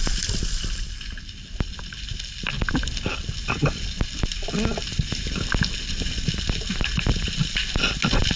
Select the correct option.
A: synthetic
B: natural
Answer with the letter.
B